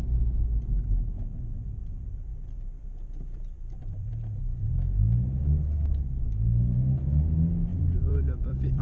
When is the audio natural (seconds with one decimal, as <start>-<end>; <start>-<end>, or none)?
0.0-2.3; 4.1-7.7